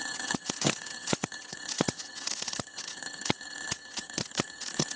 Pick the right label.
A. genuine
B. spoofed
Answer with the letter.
B